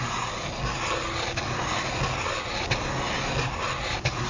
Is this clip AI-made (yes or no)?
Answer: no